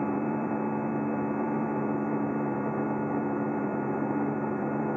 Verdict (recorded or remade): remade